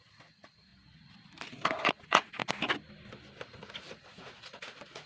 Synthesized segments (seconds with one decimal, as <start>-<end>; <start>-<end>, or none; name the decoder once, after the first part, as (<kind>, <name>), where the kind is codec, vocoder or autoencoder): 0.0-0.7 (vocoder, Vocos); 1.9-2.4; 3.8-5.1